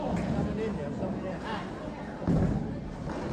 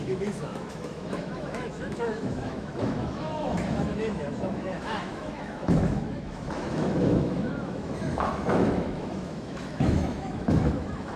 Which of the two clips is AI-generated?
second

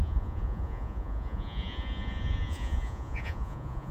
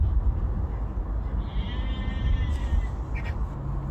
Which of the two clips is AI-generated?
first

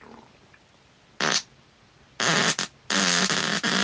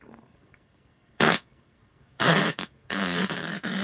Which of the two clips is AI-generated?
second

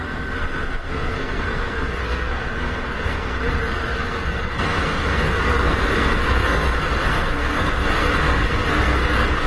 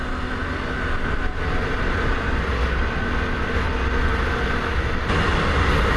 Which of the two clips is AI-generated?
first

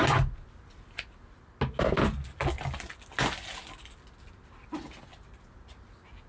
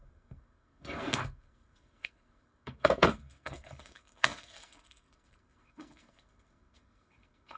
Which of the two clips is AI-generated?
second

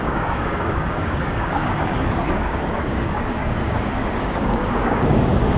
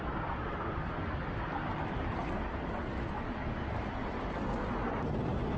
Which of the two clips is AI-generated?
first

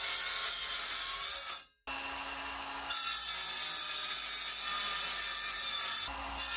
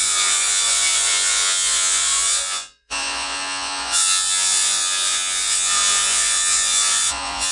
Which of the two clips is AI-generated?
second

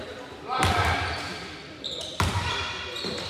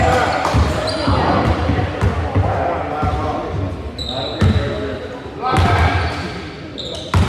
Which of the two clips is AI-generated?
first